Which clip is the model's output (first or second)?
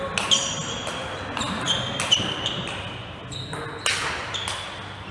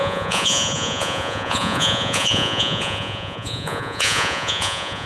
second